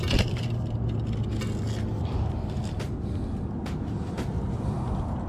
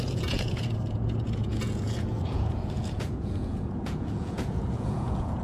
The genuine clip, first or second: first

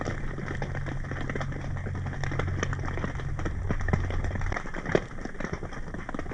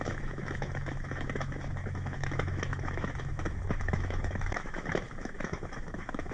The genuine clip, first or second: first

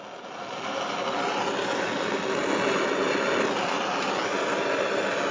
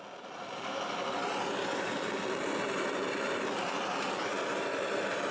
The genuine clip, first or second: first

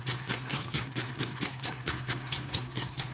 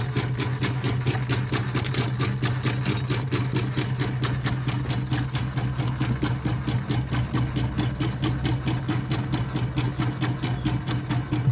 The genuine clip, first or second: second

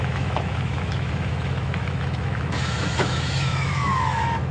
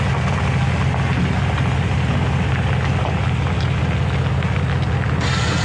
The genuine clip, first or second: second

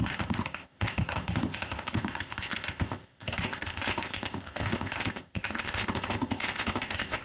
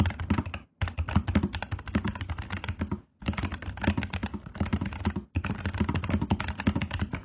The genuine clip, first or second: second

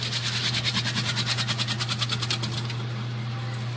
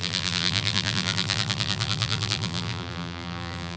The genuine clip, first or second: first